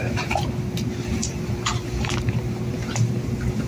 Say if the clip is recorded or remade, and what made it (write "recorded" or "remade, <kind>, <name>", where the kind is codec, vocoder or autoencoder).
remade, vocoder, BigVGAN v2